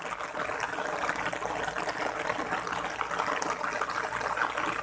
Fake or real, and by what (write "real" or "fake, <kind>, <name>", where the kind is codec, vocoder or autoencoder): real